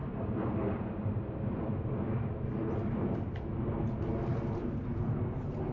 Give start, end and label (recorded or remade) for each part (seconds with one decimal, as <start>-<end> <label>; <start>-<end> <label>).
0.0-3.4 remade; 3.4-5.7 recorded